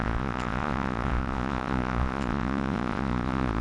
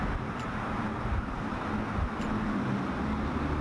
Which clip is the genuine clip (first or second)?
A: second